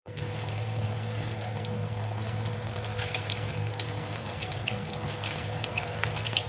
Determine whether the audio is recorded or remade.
remade